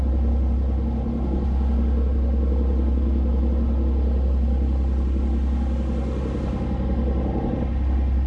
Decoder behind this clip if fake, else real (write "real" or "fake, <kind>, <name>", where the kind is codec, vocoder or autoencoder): real